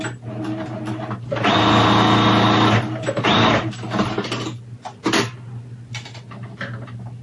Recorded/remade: recorded